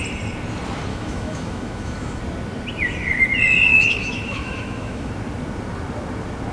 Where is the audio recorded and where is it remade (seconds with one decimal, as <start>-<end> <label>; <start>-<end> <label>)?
0.0-0.9 recorded; 0.9-2.2 remade; 2.2-3.7 recorded; 3.7-5.1 remade; 5.1-6.5 recorded